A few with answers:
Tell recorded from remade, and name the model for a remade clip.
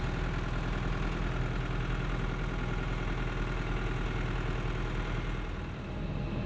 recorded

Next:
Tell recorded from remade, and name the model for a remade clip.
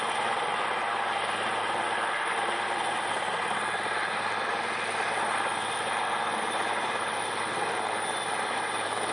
recorded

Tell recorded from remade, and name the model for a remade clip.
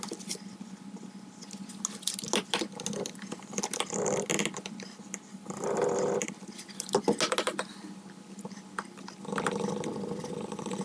recorded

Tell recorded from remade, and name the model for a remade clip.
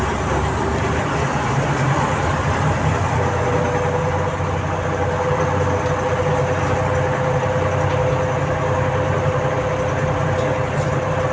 recorded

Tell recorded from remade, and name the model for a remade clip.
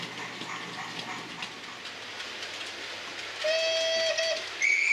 recorded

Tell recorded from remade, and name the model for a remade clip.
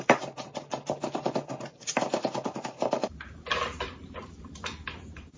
remade, vocoder, BigVGAN v2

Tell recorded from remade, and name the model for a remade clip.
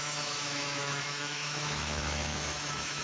remade, autoencoder, DAC-VAE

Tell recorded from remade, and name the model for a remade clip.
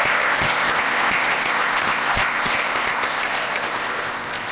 remade, codec, ZipCodec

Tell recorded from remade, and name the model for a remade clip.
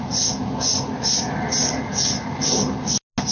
recorded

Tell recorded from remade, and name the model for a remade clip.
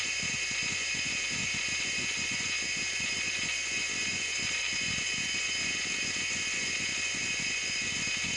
remade, vocoder, Vocos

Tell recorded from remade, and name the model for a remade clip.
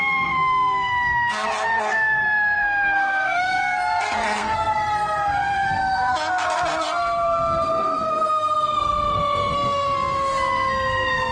remade, codec, SNAC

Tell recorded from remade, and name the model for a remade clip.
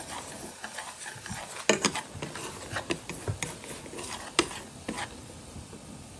recorded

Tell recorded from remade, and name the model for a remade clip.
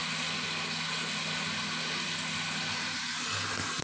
recorded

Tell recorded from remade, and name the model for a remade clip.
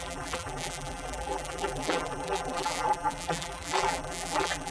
remade, vocoder, BigVGAN v2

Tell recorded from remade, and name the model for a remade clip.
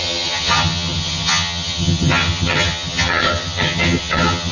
remade, vocoder, HiFi-GAN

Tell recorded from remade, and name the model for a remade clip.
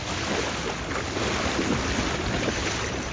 recorded